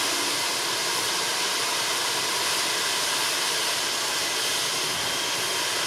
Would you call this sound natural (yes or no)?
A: yes